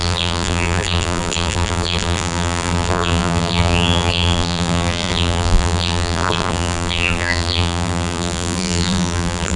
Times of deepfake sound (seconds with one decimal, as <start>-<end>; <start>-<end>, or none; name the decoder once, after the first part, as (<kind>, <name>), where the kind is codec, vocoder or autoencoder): 0.0-9.6 (vocoder, BigVGAN v2)